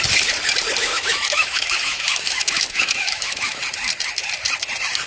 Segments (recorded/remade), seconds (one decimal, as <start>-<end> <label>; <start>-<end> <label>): 0.0-0.8 recorded; 0.8-3.6 remade; 3.6-5.1 recorded